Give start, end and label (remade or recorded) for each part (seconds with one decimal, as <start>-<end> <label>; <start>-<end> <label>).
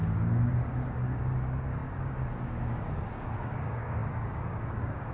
0.0-5.1 remade